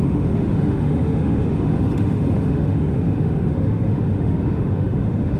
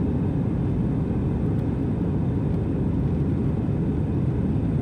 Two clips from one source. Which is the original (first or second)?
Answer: second